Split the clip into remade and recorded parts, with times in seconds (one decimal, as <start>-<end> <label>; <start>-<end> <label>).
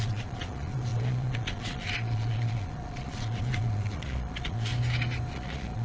0.0-4.7 remade; 4.7-5.3 recorded; 5.3-5.8 remade